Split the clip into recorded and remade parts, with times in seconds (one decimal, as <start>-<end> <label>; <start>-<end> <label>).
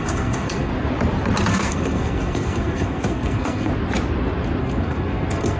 0.0-0.7 remade; 0.7-1.5 recorded; 1.5-3.7 remade; 3.7-4.6 recorded; 4.6-5.6 remade